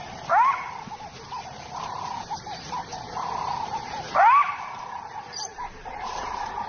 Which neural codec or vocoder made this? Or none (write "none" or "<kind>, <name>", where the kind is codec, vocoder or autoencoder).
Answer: vocoder, BigVGAN v2